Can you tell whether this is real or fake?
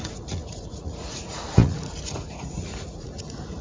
fake